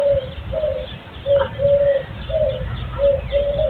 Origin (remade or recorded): recorded